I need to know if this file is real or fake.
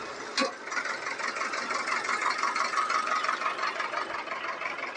real